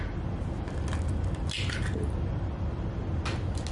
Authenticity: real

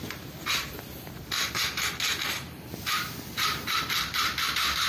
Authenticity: fake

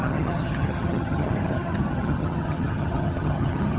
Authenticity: fake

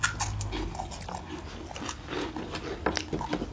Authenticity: real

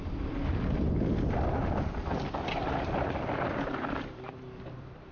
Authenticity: fake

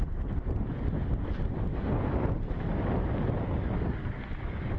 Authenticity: real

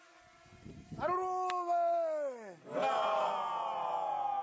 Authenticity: real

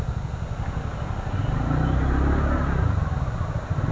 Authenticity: real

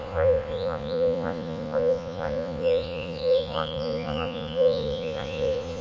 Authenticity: fake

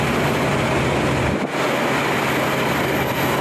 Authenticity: real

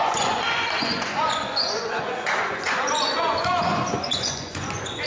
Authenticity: fake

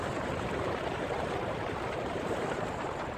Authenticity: fake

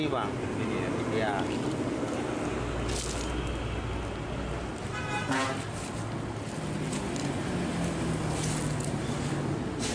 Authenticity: real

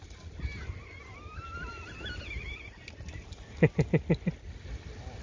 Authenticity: real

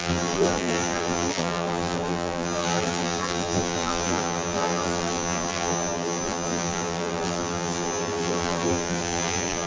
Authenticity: fake